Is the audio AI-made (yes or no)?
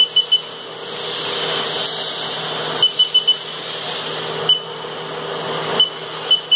no